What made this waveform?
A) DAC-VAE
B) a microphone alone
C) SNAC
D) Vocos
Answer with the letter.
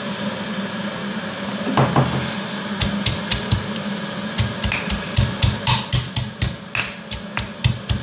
B